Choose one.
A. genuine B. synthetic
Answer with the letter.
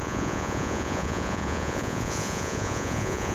B